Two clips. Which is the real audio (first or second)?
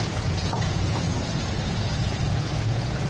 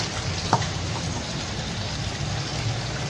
second